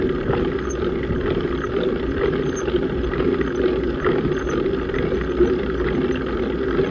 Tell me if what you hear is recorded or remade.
recorded